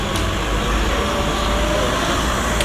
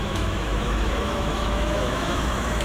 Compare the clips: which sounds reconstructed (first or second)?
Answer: second